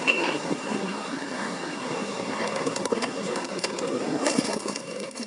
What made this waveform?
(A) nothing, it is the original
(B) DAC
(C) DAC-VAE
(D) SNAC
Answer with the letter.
D